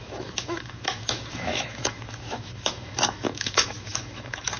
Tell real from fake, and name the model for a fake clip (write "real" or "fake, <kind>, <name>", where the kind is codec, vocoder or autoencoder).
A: fake, autoencoder, DAC-VAE